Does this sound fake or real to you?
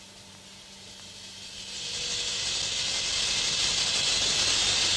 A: real